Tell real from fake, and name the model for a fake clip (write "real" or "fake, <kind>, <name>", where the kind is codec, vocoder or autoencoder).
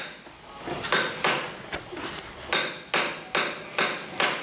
real